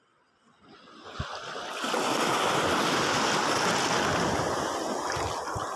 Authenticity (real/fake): real